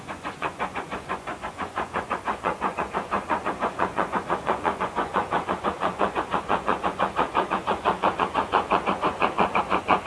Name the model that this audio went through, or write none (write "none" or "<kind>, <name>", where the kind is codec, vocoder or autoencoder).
vocoder, Vocos